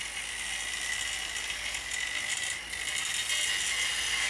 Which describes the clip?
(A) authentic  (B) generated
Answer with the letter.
A